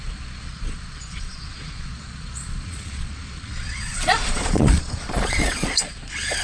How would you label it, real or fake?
fake